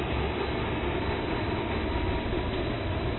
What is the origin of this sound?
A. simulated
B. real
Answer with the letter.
B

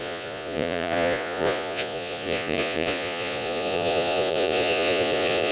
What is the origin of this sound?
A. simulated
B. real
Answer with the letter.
A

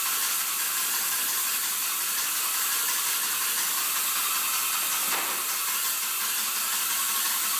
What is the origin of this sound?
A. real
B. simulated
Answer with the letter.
A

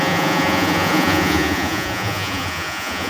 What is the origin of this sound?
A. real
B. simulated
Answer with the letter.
B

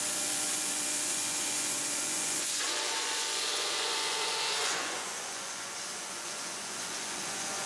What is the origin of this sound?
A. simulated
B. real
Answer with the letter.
A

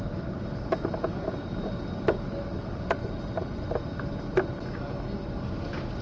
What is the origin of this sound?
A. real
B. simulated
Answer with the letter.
A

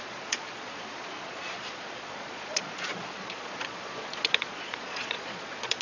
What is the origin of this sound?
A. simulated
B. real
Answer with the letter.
A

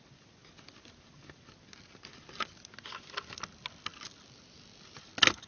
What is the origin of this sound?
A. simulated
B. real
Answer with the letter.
B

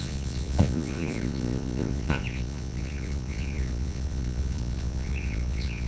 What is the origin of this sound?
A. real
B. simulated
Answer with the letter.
B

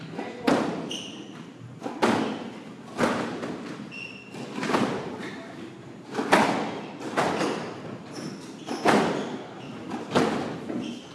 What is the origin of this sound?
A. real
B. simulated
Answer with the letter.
A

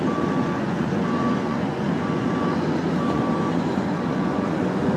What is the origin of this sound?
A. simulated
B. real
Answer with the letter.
A